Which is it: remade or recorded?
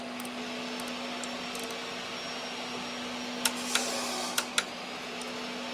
recorded